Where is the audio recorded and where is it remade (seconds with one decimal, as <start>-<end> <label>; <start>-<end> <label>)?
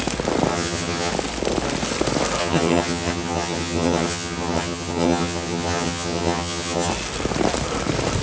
0.0-0.5 recorded; 0.5-1.1 remade; 1.1-2.4 recorded; 2.4-6.9 remade; 6.9-8.2 recorded